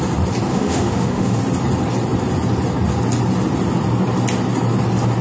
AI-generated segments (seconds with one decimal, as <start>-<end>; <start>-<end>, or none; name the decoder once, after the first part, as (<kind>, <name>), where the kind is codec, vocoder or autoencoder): 0.5-1.4 (autoencoder, DAC-VAE)